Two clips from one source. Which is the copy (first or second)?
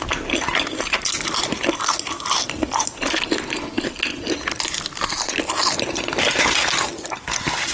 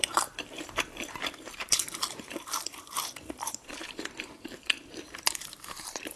second